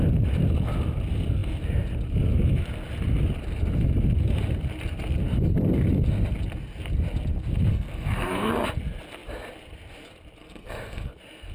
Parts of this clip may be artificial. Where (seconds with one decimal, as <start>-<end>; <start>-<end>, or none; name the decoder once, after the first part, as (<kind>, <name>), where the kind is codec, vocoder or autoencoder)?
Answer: 7.7-8.5 (codec, SNAC); 10.4-11.1